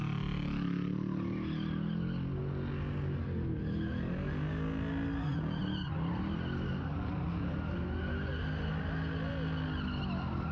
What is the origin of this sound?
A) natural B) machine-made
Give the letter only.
A